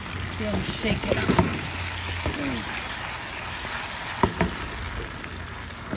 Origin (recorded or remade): recorded